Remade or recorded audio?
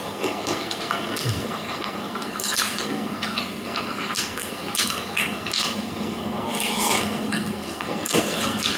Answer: remade